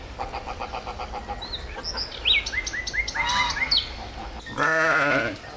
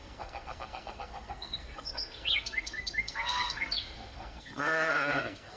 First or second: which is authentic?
first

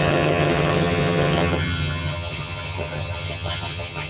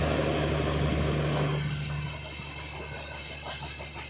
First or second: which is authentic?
second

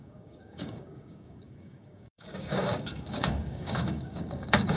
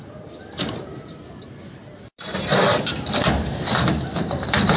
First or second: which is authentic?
second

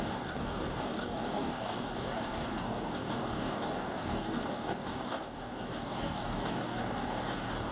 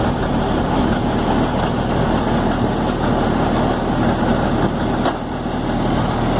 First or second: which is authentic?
second